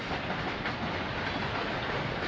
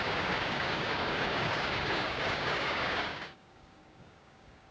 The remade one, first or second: second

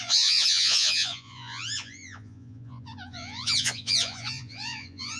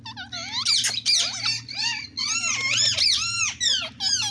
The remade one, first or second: first